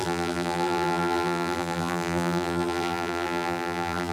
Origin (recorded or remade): remade